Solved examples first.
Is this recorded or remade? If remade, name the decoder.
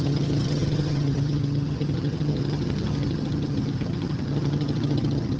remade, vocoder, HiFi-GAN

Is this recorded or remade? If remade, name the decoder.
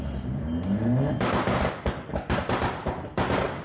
recorded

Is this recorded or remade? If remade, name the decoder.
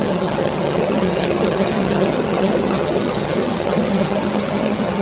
remade, vocoder, HiFi-GAN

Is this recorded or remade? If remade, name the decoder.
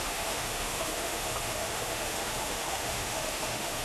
remade, autoencoder, DAC-VAE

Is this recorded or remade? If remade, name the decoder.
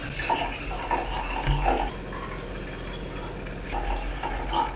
recorded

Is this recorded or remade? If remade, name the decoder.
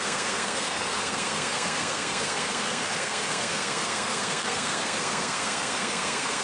remade, codec, SNAC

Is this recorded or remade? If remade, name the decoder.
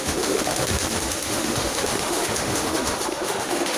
remade, autoencoder, DAC-VAE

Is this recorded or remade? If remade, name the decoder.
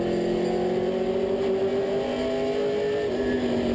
recorded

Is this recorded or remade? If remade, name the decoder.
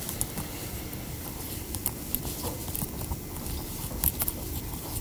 recorded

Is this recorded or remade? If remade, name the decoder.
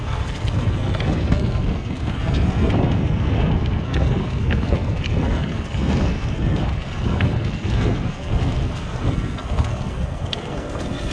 remade, codec, SNAC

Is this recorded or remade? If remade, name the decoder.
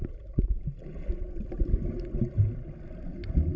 recorded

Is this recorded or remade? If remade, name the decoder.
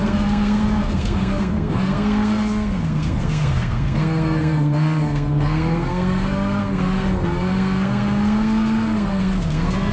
remade, codec, SNAC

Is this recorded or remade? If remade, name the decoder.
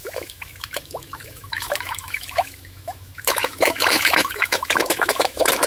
remade, autoencoder, DAC-VAE